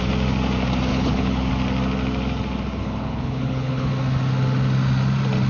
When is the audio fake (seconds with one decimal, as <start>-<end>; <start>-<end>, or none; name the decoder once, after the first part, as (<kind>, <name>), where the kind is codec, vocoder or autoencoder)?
0.9-1.5 (codec, HILCodec); 2.8-3.9